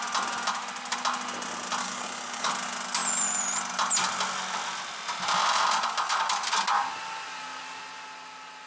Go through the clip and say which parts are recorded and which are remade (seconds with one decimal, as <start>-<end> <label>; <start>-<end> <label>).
0.0-1.8 recorded; 1.8-2.5 remade; 2.5-8.7 recorded